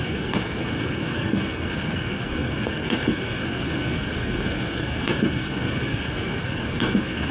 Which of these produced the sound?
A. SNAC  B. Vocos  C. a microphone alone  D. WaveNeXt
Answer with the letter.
A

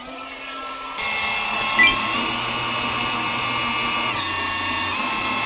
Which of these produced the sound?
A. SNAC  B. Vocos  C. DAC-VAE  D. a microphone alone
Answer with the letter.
D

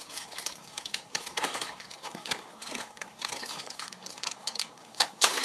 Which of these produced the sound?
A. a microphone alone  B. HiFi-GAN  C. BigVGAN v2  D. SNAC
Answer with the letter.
D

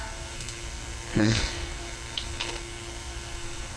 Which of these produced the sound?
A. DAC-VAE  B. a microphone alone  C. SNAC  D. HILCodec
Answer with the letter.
C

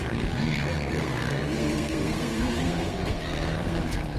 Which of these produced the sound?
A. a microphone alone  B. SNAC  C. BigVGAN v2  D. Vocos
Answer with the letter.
B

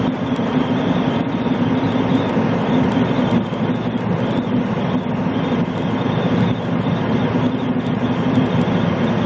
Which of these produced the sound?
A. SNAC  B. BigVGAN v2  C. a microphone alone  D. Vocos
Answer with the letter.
C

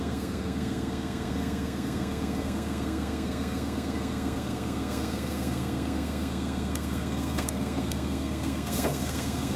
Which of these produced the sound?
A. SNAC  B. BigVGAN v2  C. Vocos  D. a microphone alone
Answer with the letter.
A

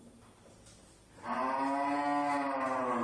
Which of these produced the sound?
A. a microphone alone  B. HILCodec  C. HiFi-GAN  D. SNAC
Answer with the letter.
A